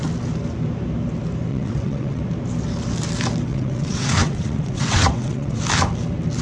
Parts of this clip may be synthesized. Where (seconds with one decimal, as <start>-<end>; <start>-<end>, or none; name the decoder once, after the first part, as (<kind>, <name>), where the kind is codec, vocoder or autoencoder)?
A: 1.5-2.2 (vocoder, WaveNeXt); 3.5-5.6